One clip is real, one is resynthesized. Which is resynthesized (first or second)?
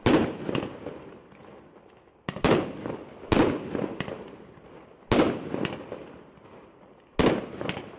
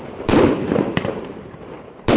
second